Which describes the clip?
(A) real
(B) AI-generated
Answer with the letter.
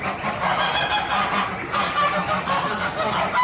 A